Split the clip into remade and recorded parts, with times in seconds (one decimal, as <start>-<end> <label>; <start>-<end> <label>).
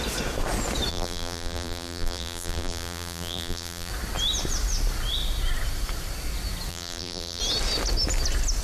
0.0-0.9 recorded; 0.9-3.9 remade; 3.9-6.7 recorded; 6.7-7.4 remade; 7.4-8.6 recorded